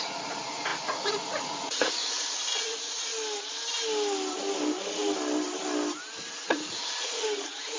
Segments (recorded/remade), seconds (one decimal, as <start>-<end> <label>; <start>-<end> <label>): 0.0-3.1 remade; 3.1-6.3 recorded; 6.3-7.8 remade

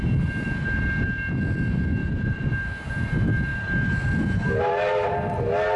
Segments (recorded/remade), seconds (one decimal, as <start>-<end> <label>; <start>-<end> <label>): 0.0-2.0 recorded; 2.0-2.5 remade; 2.5-5.8 recorded

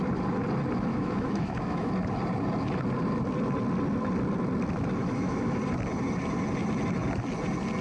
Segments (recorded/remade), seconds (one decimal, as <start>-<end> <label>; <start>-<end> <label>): 0.0-0.9 recorded; 0.9-1.9 remade; 1.9-5.0 recorded; 5.0-5.6 remade; 5.6-7.8 recorded

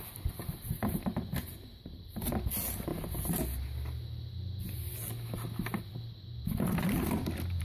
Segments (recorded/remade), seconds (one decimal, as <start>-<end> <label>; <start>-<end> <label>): 0.0-0.6 recorded; 0.6-2.0 remade; 2.0-7.6 recorded

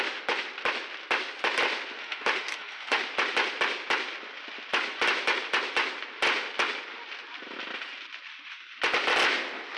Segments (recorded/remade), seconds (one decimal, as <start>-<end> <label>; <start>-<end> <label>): 0.0-2.0 recorded; 2.0-3.0 remade; 3.0-8.3 recorded; 8.3-8.8 remade; 8.8-9.8 recorded